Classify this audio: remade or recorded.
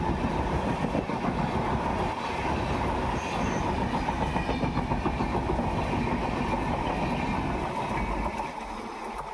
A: recorded